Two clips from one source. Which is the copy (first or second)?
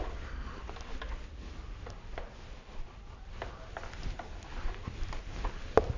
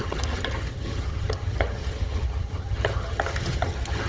second